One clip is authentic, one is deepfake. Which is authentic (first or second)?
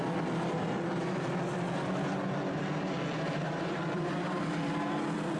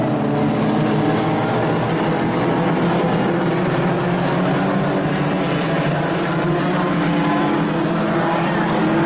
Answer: second